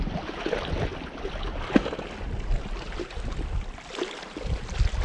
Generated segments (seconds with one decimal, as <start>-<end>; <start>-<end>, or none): none